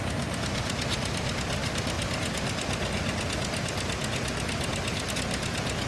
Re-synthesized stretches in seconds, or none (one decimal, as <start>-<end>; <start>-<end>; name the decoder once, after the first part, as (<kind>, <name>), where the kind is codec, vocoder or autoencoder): none